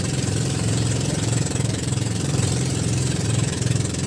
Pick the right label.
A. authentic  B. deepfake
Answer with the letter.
B